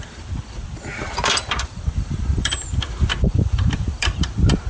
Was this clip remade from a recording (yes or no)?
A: yes